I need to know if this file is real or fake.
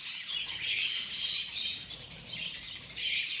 fake